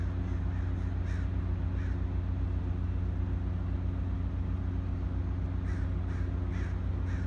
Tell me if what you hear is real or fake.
real